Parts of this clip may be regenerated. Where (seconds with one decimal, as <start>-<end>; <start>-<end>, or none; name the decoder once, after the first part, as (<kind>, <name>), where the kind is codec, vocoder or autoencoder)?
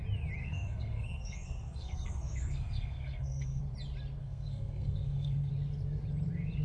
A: 0.4-3.6 (codec, SNAC); 4.2-5.5